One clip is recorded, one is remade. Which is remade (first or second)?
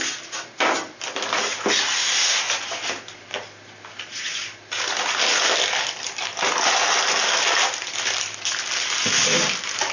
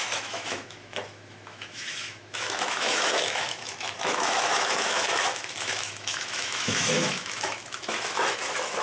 second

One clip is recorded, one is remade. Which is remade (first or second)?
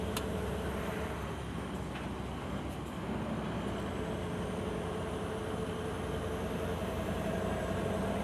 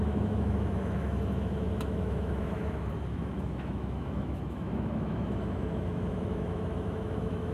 second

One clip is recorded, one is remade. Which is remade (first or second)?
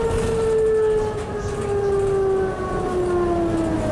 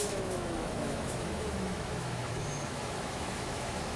second